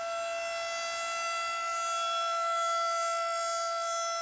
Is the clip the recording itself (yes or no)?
yes